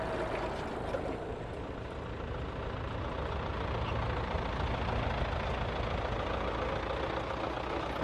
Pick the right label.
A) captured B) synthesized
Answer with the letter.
A